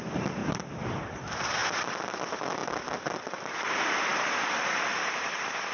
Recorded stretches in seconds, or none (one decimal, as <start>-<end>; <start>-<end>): none